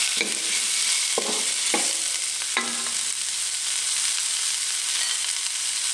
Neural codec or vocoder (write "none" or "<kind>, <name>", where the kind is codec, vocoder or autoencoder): none